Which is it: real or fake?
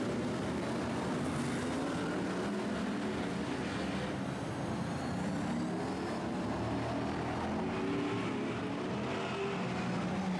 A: real